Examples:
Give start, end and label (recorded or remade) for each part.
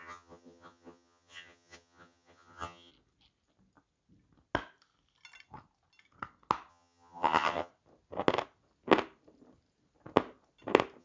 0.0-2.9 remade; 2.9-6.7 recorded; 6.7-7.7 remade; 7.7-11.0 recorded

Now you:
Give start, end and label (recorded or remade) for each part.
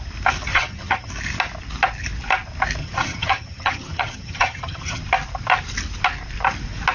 0.0-0.5 recorded; 0.5-1.1 remade; 1.1-2.8 recorded; 2.8-5.0 remade; 5.0-6.9 recorded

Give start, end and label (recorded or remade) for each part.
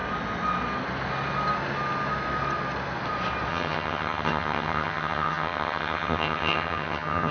0.0-3.5 recorded; 3.5-7.3 remade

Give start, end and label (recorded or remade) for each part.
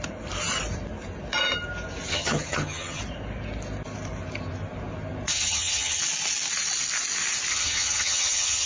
0.0-2.1 recorded; 2.1-3.0 remade; 3.0-5.3 recorded; 5.3-6.0 remade; 6.0-7.5 recorded; 7.5-8.7 remade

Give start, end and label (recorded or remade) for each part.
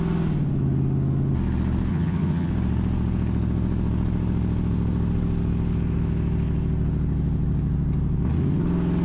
0.0-1.9 recorded; 1.9-2.5 remade; 2.5-9.0 recorded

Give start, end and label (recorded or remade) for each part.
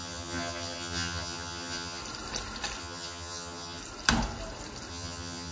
0.0-2.0 remade; 2.0-2.8 recorded; 2.8-3.8 remade; 3.8-4.9 recorded; 4.9-5.5 remade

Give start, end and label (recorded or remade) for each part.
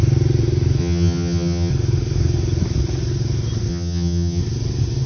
0.0-0.8 recorded; 0.8-1.7 remade; 1.7-3.7 recorded; 3.7-4.4 remade; 4.4-5.1 recorded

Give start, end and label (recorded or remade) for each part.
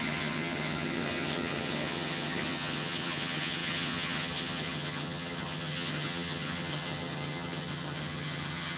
0.0-8.8 remade